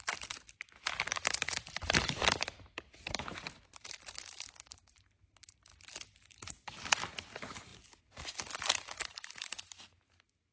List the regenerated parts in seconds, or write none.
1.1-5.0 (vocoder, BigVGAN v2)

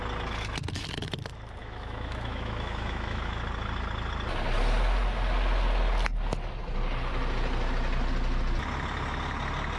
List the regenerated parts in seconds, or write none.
1.6-3.4 (autoencoder, DAC-VAE)

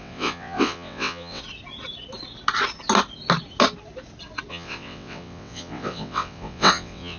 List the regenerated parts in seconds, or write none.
0.0-1.4 (vocoder, WaveNeXt); 4.5-7.2

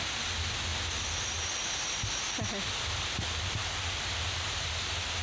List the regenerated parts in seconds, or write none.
none

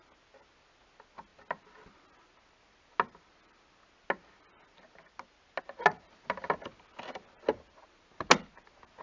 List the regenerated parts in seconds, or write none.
none

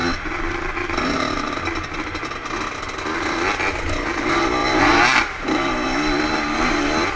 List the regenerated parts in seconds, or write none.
0.0-1.6 (vocoder, BigVGAN v2); 4.6-6.7

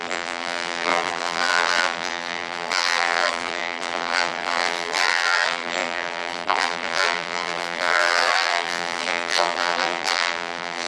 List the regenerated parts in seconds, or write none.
0.0-10.9 (vocoder, BigVGAN v2)

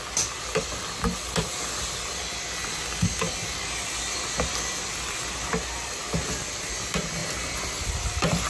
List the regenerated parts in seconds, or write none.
none